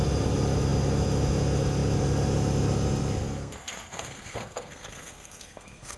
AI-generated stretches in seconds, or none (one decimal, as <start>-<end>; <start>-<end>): 3.2-6.0